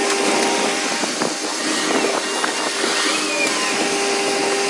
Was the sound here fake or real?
real